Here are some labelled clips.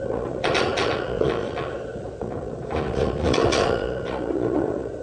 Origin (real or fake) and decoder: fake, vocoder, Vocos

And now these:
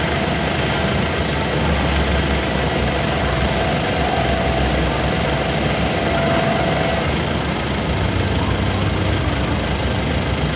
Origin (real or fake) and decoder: real